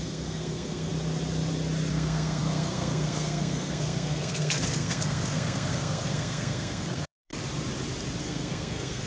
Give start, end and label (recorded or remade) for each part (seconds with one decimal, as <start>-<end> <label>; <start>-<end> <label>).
0.0-0.9 remade; 0.9-1.9 recorded; 1.9-7.3 remade; 7.3-8.2 recorded; 8.2-9.1 remade